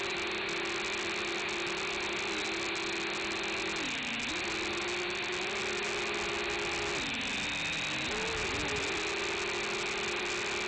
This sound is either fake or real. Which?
real